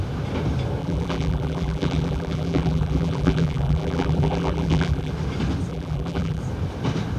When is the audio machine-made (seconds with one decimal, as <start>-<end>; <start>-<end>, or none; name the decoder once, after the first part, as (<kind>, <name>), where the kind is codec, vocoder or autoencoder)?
0.8-5.1 (vocoder, BigVGAN v2); 5.7-6.4